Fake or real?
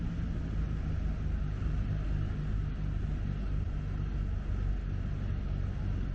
real